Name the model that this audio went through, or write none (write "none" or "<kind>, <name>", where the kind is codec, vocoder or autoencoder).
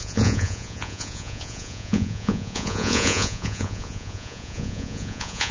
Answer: vocoder, Vocos